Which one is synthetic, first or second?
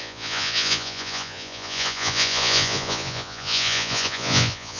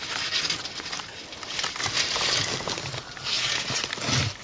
first